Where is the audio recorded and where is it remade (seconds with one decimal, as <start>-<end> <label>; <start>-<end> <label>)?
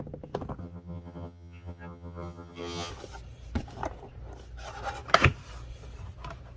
0.0-0.6 recorded; 0.6-2.9 remade; 2.9-6.6 recorded